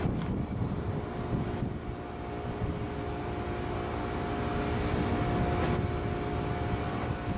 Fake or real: real